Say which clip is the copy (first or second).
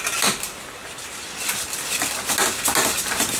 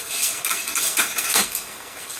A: second